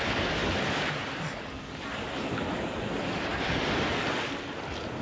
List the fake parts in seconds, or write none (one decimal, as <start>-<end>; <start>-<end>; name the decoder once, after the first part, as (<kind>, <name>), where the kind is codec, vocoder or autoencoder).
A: 0.4-1.3 (vocoder, BigVGAN v2); 3.3-3.9